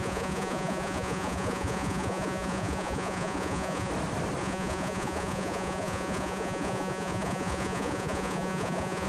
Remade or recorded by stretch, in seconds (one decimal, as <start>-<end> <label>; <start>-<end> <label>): 0.0-3.9 remade; 3.9-4.4 recorded; 4.4-9.1 remade